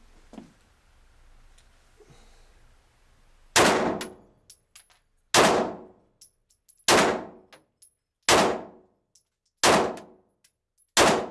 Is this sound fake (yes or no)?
no